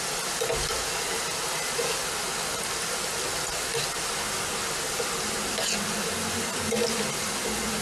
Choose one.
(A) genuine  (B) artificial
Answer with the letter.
A